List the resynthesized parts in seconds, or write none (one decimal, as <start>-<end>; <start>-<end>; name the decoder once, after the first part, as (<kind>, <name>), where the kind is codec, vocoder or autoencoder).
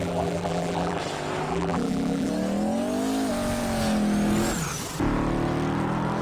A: 0.0-1.0 (vocoder, BigVGAN v2); 1.5-2.3